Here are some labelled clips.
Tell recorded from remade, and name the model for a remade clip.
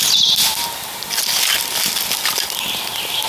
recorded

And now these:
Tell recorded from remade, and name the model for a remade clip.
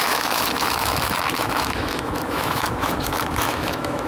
remade, autoencoder, DAC-VAE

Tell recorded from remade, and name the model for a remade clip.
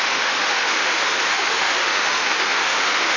remade, autoencoder, DAC-VAE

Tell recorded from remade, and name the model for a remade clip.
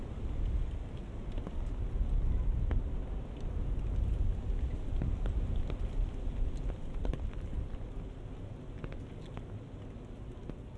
recorded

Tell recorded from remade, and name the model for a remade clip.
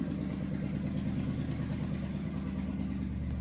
recorded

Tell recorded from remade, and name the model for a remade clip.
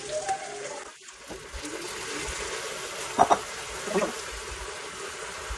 recorded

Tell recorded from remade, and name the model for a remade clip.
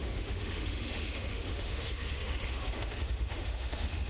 remade, autoencoder, DAC-VAE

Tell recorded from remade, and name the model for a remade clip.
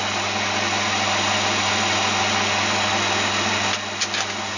recorded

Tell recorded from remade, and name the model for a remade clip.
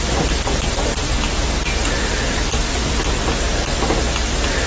recorded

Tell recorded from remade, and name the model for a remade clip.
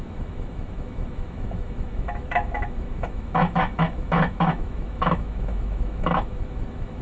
remade, autoencoder, DAC-VAE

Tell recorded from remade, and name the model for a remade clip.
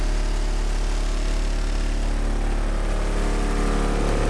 recorded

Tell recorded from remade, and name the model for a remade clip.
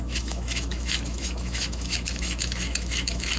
remade, autoencoder, DAC-VAE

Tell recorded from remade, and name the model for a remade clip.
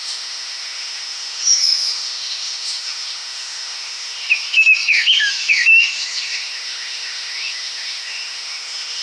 remade, autoencoder, DAC-VAE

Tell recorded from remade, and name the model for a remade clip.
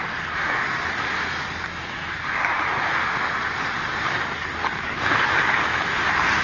recorded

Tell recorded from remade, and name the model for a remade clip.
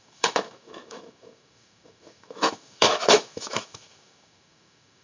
remade, autoencoder, DAC-VAE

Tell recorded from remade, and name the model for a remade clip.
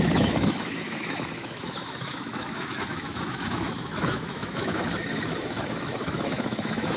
remade, autoencoder, DAC-VAE